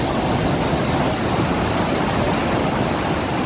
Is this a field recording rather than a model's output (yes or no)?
yes